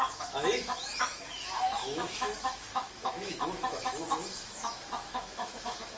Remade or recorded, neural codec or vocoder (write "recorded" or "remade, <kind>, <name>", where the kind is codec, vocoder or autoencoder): remade, autoencoder, DAC-VAE